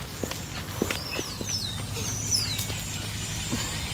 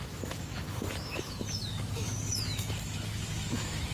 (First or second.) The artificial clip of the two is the second